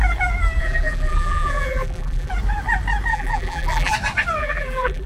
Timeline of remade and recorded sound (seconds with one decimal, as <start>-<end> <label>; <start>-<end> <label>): 0.0-0.6 recorded; 0.6-2.3 remade; 2.3-3.1 recorded; 3.1-3.9 remade; 3.9-4.4 recorded; 4.4-5.1 remade